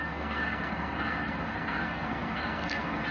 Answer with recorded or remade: remade